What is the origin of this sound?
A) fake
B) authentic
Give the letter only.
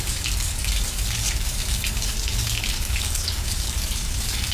A